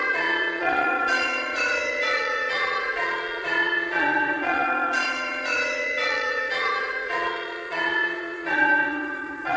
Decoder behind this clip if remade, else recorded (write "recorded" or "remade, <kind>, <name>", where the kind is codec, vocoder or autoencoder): remade, vocoder, Vocos